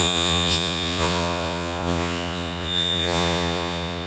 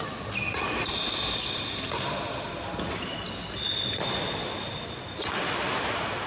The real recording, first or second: second